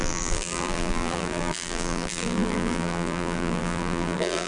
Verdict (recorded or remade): remade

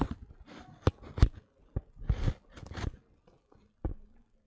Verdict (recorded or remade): recorded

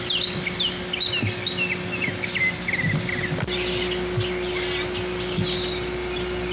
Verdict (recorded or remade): recorded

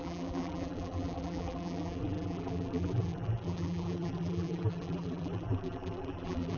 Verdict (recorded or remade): remade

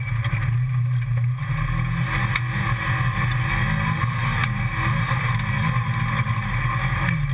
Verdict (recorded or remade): recorded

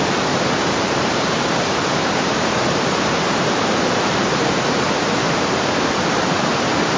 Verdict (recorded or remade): remade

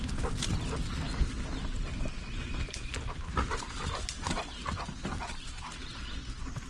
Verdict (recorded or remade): recorded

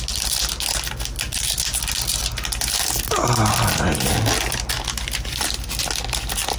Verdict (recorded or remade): recorded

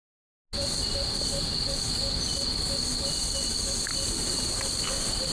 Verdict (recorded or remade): recorded